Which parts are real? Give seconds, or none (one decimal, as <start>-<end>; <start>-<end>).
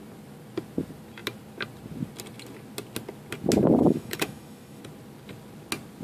0.0-3.8; 4.8-6.0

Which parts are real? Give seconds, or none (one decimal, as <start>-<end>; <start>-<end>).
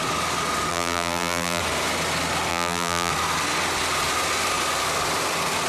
0.0-0.7; 1.6-2.5; 3.1-5.7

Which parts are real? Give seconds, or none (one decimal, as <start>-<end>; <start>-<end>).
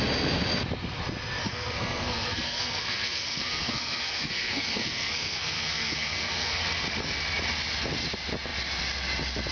0.0-1.4; 6.6-9.5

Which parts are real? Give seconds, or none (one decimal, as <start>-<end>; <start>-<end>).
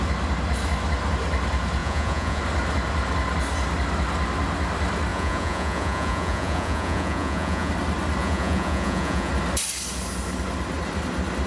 0.0-1.8; 2.4-5.1; 7.7-8.2; 9.3-11.5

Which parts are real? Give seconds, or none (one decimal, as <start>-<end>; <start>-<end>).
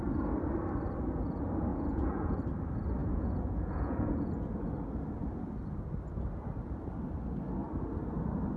0.0-1.7; 2.4-3.0; 4.3-8.6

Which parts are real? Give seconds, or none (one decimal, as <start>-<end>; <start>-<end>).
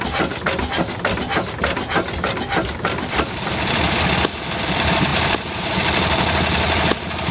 0.0-5.1; 5.7-7.3